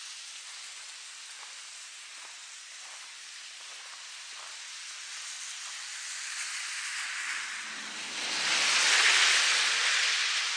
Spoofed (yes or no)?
no